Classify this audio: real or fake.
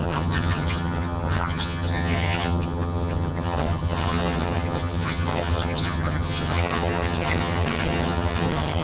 fake